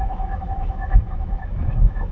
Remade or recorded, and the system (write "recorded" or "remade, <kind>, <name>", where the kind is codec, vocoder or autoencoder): remade, autoencoder, DAC-VAE